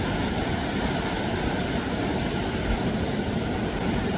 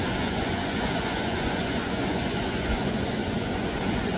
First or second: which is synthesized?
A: second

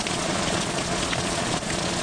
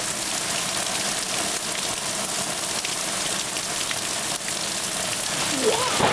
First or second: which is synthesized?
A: first